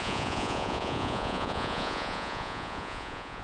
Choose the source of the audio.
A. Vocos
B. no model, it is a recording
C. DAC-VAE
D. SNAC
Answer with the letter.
A